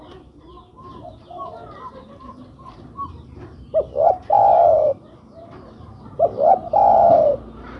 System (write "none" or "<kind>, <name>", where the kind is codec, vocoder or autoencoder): vocoder, BigVGAN v2